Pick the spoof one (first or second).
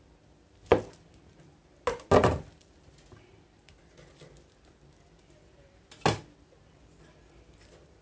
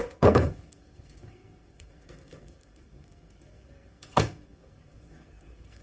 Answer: second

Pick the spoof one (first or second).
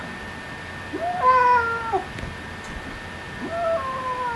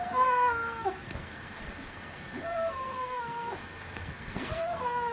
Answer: second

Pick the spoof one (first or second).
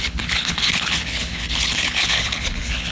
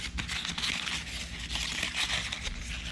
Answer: first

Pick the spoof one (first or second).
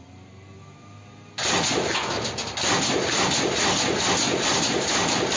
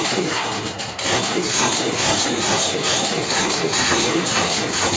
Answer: second